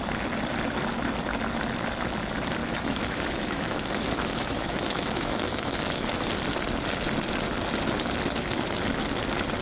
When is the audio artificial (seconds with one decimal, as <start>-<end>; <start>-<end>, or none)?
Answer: 2.6-6.3